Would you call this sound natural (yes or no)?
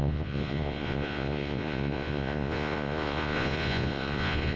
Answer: no